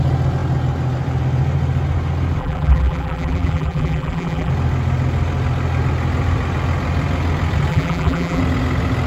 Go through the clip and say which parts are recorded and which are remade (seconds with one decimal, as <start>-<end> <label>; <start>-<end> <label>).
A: 0.0-2.4 recorded; 2.4-4.5 remade; 4.5-7.7 recorded; 7.7-8.4 remade; 8.4-9.1 recorded